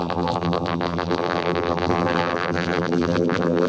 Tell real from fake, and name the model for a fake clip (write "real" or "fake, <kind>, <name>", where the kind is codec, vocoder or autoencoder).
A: fake, vocoder, BigVGAN v2